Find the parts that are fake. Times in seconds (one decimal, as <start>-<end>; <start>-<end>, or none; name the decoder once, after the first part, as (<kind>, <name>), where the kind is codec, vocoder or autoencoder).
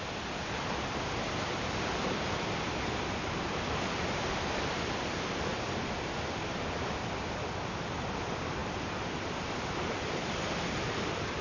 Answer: none